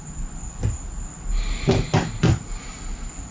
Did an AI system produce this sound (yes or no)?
no